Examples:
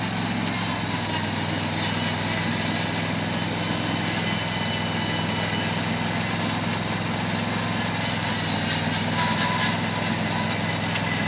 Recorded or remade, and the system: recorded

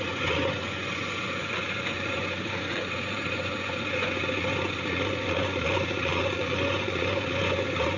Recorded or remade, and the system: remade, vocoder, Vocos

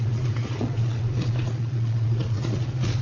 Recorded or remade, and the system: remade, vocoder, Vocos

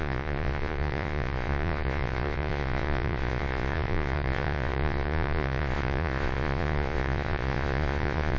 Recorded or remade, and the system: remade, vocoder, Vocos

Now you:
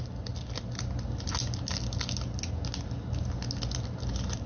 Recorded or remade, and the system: recorded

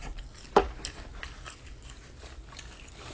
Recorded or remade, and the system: recorded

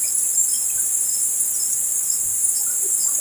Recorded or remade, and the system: recorded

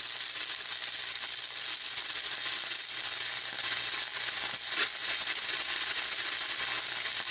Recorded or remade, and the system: recorded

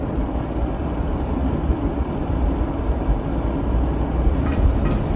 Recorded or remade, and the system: recorded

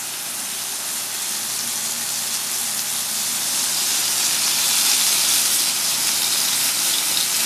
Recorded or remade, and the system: recorded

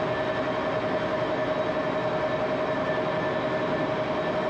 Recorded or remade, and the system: recorded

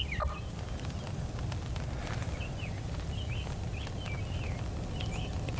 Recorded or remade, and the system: recorded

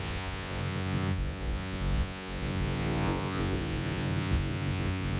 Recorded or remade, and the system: remade, vocoder, Vocos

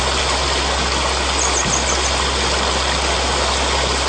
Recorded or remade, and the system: recorded